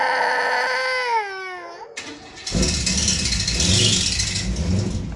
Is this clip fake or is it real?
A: real